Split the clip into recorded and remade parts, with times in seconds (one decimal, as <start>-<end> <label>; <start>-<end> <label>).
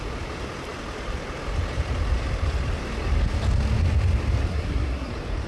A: 0.0-4.5 recorded; 4.5-5.1 remade; 5.1-5.5 recorded